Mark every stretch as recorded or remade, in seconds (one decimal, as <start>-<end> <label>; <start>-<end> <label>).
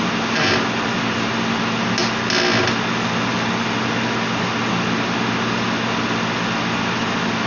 0.0-7.5 recorded